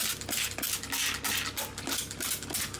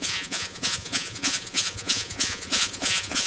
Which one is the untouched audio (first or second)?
first